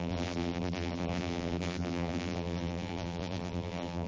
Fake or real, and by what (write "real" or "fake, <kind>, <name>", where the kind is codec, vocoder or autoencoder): fake, vocoder, BigVGAN v2